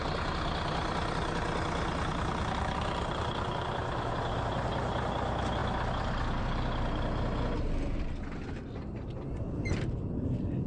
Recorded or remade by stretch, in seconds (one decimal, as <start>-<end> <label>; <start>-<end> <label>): 0.0-10.7 recorded